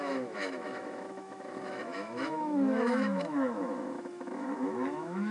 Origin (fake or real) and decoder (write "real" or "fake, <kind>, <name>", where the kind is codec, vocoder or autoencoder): fake, autoencoder, DAC-VAE